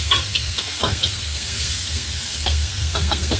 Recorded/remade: remade